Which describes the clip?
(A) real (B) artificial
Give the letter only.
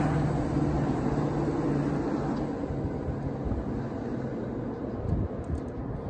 A